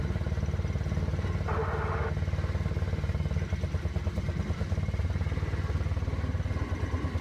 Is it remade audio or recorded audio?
recorded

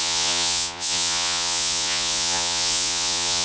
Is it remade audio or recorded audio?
remade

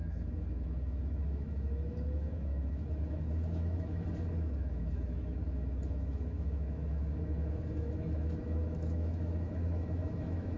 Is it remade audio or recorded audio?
remade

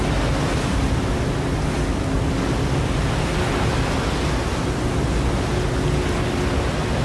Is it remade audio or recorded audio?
recorded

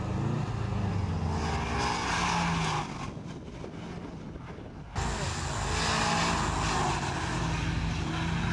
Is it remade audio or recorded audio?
recorded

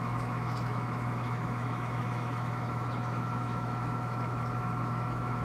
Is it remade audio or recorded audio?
remade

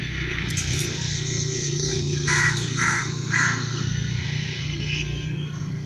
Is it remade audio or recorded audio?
remade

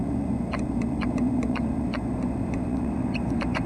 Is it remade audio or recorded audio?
remade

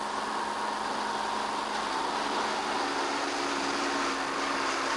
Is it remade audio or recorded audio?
recorded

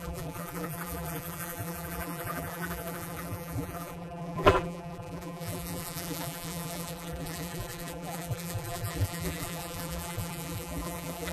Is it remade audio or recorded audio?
remade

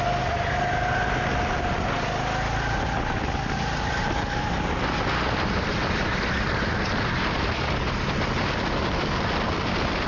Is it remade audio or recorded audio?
recorded